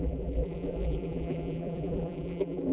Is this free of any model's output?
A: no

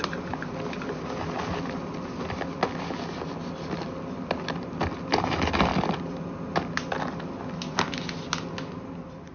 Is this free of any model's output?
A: yes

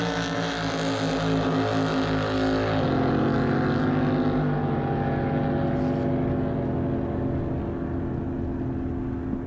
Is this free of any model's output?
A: yes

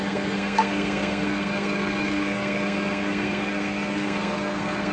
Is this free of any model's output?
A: no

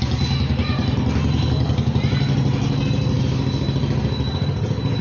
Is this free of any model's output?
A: yes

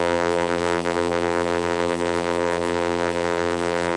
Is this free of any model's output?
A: no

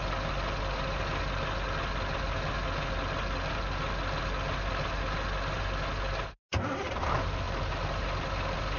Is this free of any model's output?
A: yes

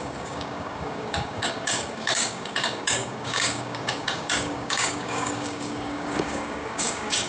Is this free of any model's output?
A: no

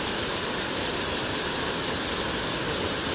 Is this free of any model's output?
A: yes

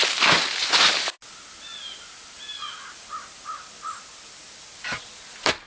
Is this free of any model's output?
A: yes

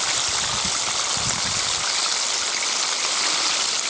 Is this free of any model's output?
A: yes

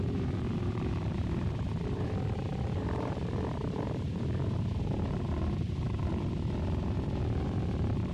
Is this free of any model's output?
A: no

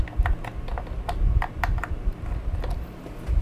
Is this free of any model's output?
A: yes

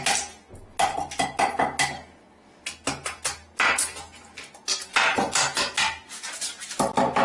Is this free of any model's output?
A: yes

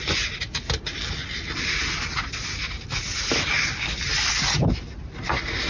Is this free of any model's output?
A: yes